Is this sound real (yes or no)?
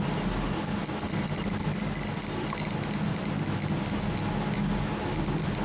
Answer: yes